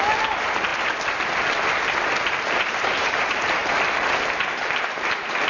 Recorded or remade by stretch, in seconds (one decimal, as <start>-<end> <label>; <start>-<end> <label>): 0.0-0.7 remade; 0.7-2.4 recorded; 2.4-3.6 remade; 3.6-4.5 recorded; 4.5-5.5 remade